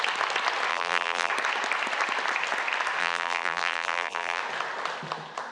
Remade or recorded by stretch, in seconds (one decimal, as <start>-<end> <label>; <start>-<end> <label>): 0.0-0.7 recorded; 0.7-1.3 remade; 1.3-3.0 recorded; 3.0-4.4 remade; 4.4-5.5 recorded